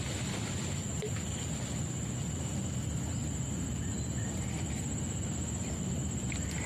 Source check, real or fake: real